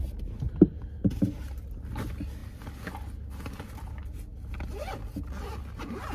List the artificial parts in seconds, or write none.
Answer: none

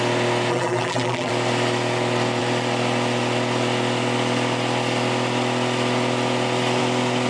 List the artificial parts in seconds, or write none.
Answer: 0.5-1.3 (vocoder, BigVGAN v2)

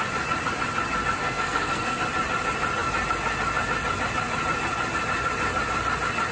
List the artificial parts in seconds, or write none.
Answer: 1.2-2.0 (codec, SNAC)

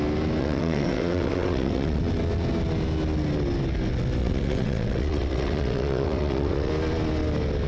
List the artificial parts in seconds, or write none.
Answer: 0.4-2.0 (vocoder, WaveNeXt); 4.2-6.7